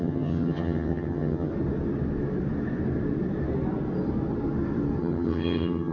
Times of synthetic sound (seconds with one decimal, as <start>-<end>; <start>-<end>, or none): 0.0-1.5; 5.0-5.9